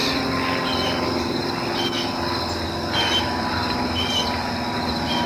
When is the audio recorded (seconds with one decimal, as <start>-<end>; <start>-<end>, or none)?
0.0-5.3